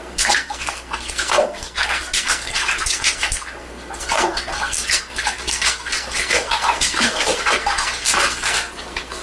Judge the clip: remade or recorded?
remade